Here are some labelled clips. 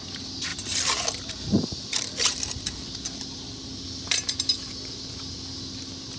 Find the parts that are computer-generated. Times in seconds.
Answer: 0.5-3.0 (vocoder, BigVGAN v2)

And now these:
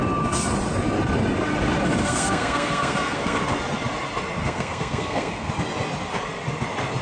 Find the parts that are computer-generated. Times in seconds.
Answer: 2.0-3.4 (codec, SNAC); 4.4-5.5

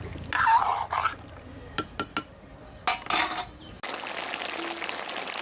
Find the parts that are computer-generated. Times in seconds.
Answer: none

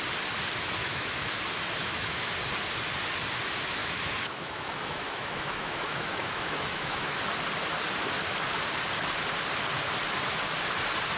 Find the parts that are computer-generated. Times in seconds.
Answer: 0.8-1.4 (autoencoder, DAC-VAE); 1.8-2.3; 3.8-7.2

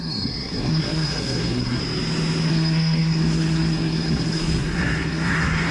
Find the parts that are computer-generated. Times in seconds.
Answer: 0.0-1.8 (codec, SNAC); 2.5-5.7